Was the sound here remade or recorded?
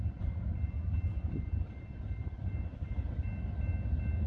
recorded